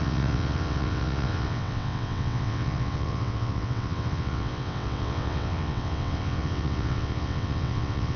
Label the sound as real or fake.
fake